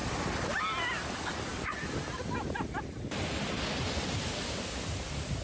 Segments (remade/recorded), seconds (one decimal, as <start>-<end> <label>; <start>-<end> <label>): 0.0-5.4 recorded